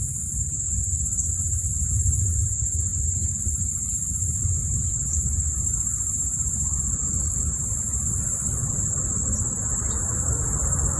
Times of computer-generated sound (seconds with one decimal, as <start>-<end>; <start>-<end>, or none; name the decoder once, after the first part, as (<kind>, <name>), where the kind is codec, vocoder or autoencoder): none

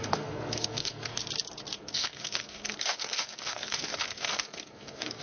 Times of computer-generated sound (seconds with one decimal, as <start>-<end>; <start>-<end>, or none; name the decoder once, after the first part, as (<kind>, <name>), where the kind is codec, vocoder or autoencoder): 0.0-1.1 (codec, SNAC); 1.8-5.2

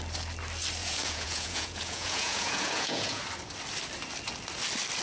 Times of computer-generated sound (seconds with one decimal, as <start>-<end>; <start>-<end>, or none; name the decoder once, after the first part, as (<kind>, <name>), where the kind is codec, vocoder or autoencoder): 0.8-3.2 (vocoder, Vocos)

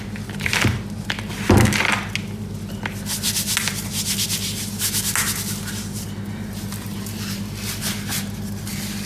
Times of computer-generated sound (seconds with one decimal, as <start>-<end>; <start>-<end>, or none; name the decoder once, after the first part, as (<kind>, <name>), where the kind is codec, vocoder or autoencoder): none

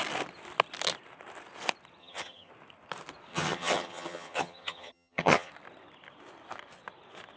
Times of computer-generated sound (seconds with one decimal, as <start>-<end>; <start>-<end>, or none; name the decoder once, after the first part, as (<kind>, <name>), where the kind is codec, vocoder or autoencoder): 2.0-2.5 (vocoder, HiFi-GAN); 3.3-5.5

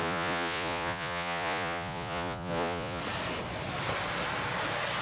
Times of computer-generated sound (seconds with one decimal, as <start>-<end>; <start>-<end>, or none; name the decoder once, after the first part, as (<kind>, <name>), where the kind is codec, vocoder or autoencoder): 0.0-3.0 (vocoder, Vocos)

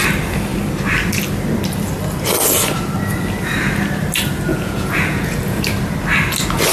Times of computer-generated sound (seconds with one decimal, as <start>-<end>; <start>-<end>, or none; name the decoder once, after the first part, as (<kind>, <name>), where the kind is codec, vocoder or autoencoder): 4.5-5.6 (vocoder, Vocos)

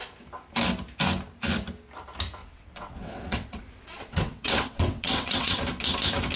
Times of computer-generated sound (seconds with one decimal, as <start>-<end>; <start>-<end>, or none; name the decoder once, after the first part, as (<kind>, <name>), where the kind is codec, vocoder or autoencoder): 2.4-5.6 (vocoder, WaveNeXt)